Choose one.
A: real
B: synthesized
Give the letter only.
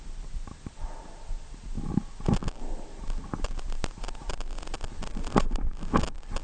A